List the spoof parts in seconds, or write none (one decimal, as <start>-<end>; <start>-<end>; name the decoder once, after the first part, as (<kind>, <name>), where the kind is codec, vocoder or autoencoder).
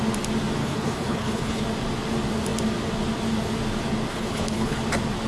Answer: 0.6-1.6 (codec, HILCodec); 4.1-4.8